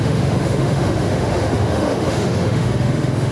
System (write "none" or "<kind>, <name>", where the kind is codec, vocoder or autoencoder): autoencoder, DAC-VAE